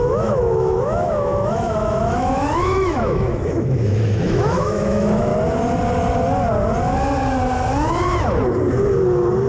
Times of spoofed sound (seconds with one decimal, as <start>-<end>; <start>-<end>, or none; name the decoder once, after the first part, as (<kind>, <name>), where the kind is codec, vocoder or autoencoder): 0.0-5.3 (autoencoder, DAC-VAE)